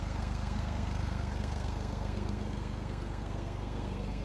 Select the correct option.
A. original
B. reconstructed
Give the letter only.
B